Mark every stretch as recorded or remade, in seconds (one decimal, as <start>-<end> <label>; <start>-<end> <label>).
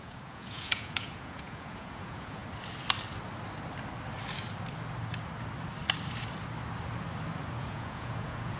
0.0-2.4 remade; 2.4-7.6 recorded; 7.6-8.6 remade